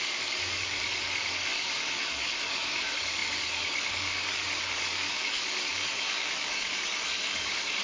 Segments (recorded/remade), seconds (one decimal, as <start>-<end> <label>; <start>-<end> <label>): 0.0-7.8 remade